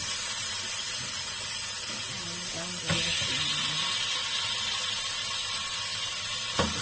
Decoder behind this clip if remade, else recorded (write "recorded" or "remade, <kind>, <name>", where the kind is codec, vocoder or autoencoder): recorded